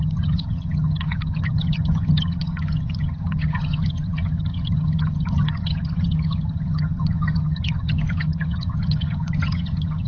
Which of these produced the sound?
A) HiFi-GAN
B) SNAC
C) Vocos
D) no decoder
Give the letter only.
A